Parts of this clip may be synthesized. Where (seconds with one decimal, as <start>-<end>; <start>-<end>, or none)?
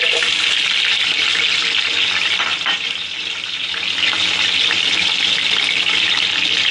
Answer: 0.0-6.7